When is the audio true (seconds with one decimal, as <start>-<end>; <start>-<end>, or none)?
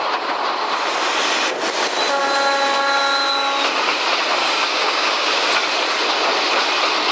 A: 0.0-4.4; 5.5-7.1